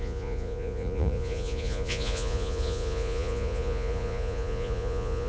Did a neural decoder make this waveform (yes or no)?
yes